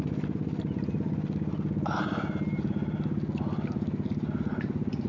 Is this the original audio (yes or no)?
yes